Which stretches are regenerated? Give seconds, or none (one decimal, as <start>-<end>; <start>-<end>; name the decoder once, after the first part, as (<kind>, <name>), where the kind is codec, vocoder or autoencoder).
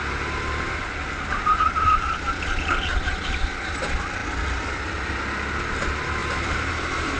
none